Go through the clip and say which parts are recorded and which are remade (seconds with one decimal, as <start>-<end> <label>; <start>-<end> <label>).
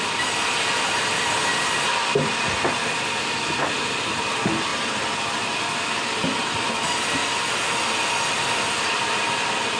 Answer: 0.0-9.8 recorded